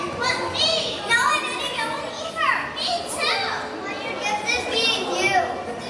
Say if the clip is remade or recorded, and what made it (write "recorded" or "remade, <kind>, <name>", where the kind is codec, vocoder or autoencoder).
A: recorded